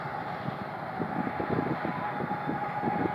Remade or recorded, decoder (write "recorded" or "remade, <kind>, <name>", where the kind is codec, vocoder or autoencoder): recorded